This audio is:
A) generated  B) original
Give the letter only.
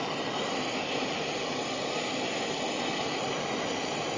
B